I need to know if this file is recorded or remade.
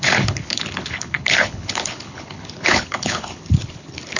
remade